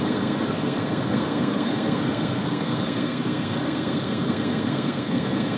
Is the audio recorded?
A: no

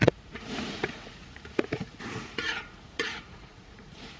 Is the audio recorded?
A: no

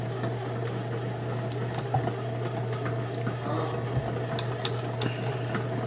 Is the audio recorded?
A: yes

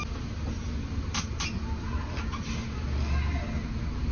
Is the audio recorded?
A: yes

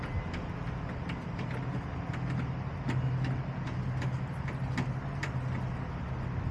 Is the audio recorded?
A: yes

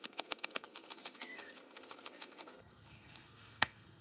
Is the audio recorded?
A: no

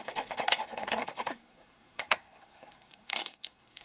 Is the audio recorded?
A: no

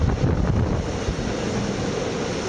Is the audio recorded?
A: yes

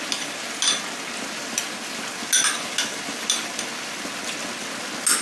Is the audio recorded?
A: yes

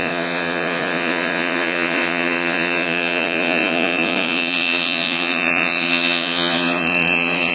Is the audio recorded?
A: no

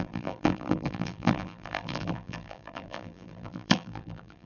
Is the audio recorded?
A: no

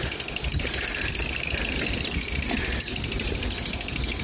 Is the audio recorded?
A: yes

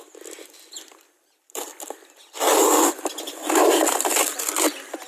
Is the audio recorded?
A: yes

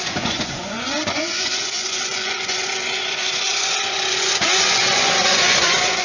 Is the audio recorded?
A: no